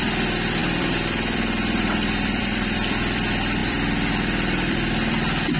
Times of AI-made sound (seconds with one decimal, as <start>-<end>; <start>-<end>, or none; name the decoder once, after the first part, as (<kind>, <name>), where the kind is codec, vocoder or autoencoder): 0.0-5.6 (vocoder, BigVGAN v2)